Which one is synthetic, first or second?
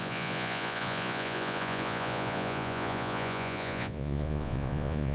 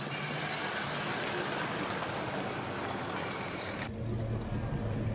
first